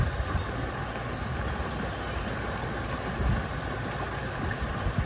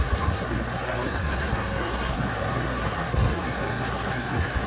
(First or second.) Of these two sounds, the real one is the first